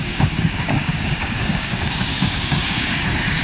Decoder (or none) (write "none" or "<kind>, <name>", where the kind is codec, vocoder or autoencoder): codec, DAC